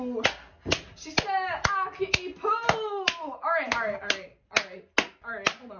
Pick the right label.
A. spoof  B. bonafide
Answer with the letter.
B